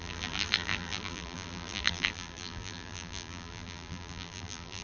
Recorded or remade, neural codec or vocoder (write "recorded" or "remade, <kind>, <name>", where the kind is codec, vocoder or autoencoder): remade, vocoder, BigVGAN v2